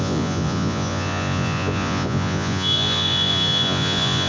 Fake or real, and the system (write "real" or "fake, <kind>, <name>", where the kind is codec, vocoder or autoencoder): fake, vocoder, Vocos